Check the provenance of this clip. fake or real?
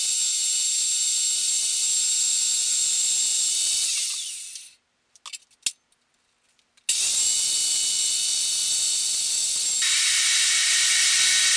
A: real